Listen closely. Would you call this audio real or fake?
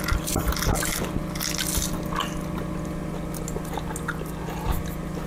real